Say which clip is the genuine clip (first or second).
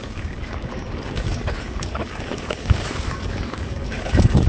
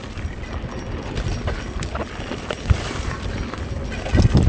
second